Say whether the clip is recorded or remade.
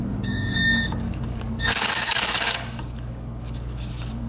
remade